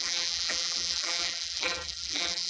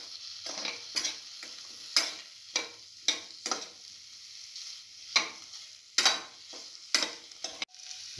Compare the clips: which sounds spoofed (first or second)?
first